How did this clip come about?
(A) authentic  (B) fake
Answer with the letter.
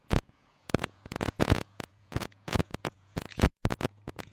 B